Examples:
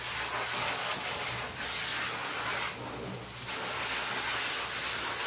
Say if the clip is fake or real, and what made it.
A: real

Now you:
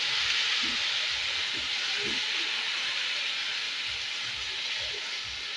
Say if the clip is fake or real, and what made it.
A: real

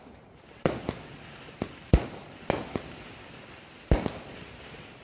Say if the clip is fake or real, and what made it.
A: real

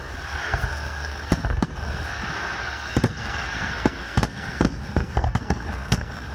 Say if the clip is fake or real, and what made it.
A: fake, codec, SNAC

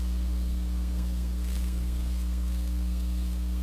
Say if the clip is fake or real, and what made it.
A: fake, codec, SNAC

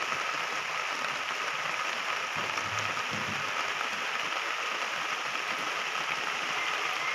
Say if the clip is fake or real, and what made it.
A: real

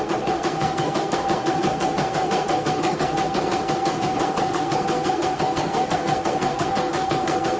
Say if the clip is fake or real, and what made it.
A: fake, codec, SNAC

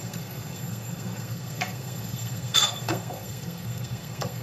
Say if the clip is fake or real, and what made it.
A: fake, codec, SNAC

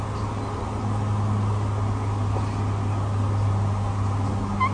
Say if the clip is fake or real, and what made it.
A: real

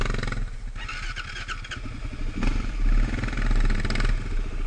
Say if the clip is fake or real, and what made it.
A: real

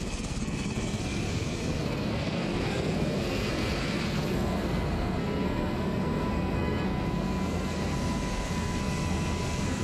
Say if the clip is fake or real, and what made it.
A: fake, codec, SNAC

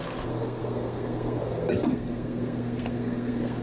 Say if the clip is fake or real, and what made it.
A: fake, codec, SNAC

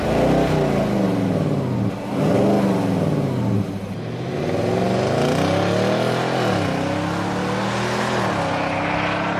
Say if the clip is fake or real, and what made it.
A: real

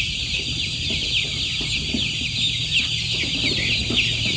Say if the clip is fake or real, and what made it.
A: real